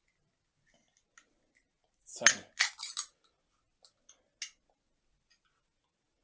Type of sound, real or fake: real